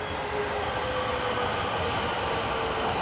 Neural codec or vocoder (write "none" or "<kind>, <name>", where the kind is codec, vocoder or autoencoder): none